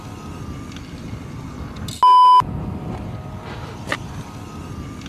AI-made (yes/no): no